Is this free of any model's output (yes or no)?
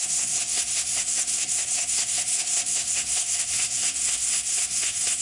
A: no